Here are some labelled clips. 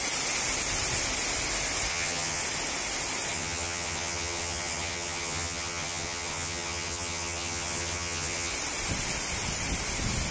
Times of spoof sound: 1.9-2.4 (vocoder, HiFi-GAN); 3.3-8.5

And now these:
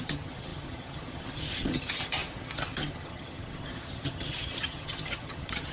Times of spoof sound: 0.0-5.7 (vocoder, HiFi-GAN)

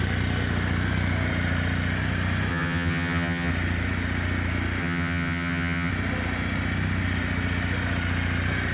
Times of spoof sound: 2.5-3.5 (vocoder, HiFi-GAN); 4.8-5.9